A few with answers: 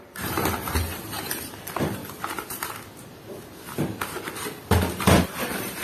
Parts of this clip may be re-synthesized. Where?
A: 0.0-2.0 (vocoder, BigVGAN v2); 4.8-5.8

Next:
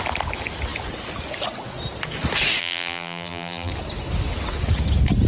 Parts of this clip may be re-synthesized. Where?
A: 2.6-3.7 (vocoder, BigVGAN v2)

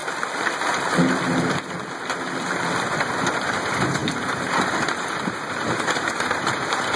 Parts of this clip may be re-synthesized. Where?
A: 3.2-7.0 (vocoder, BigVGAN v2)

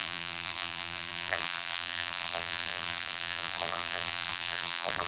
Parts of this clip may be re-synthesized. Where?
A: 0.0-5.1 (vocoder, BigVGAN v2)

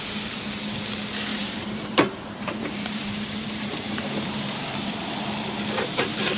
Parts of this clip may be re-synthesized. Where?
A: 1.3-4.9 (vocoder, BigVGAN v2)